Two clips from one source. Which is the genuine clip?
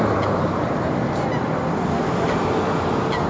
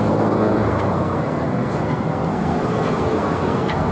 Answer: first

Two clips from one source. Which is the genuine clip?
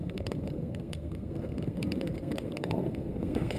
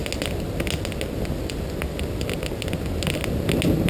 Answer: second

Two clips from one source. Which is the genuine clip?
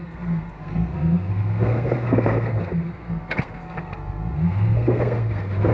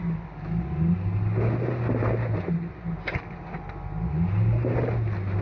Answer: second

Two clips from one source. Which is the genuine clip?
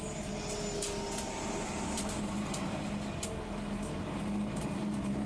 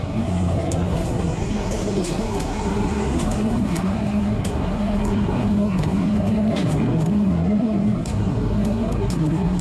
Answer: first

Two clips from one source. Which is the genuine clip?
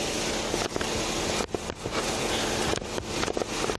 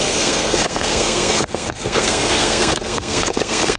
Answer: first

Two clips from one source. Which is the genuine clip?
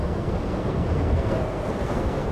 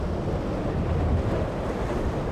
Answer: second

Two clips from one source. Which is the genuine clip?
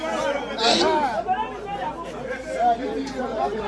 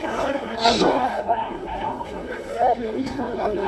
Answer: first